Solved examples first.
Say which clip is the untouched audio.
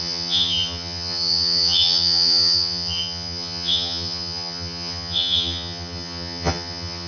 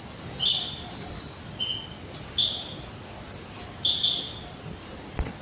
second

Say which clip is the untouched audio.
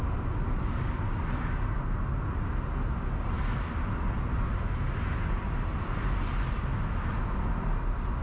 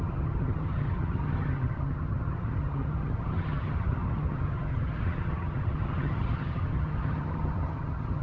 first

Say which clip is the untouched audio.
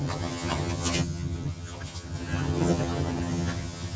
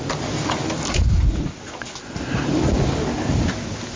second